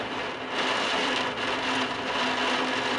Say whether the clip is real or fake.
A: real